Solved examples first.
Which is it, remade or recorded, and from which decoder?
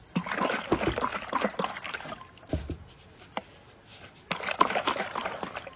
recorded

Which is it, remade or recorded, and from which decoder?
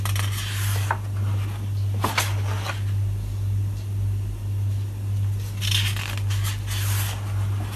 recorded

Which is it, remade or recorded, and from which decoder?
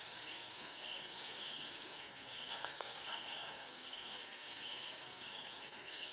remade, codec, SNAC